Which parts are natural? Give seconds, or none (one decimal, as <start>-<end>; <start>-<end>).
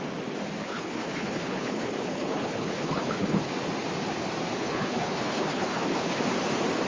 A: 0.0-0.6; 3.5-4.6; 6.2-6.9